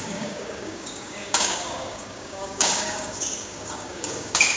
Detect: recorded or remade remade